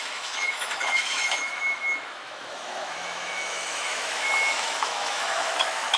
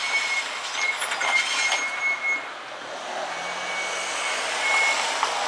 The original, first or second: second